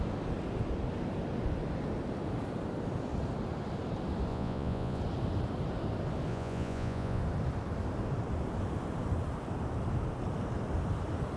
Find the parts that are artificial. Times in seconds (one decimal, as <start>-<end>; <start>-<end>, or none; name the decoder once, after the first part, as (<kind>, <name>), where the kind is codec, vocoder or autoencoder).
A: 4.3-5.0 (vocoder, Vocos); 6.3-7.2